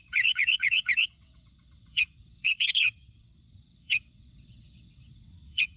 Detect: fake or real fake